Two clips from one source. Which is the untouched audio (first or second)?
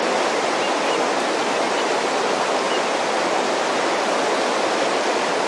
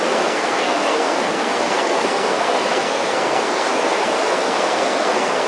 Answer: first